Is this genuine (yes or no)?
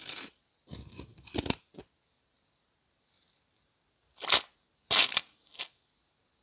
yes